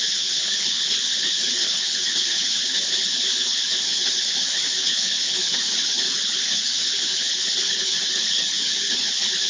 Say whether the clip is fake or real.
fake